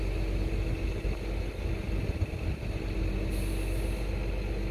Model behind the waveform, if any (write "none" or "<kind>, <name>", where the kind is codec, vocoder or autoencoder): none